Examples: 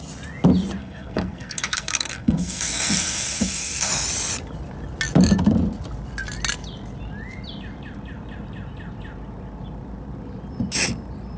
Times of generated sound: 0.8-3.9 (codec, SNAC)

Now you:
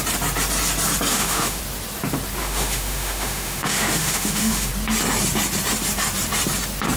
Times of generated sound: 1.1-1.6 (autoencoder, DAC-VAE); 2.4-4.7

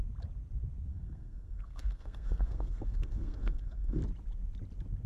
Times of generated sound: 0.9-4.0 (codec, SNAC)

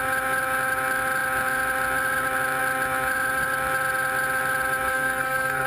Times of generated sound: 4.9-5.7 (codec, SNAC)